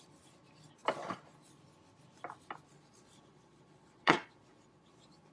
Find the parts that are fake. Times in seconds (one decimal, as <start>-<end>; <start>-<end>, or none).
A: 2.7-5.3

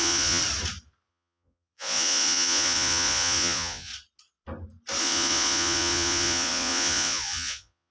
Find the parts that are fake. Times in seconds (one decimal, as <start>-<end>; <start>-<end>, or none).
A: 0.0-0.4; 1.1-3.9; 5.0-7.9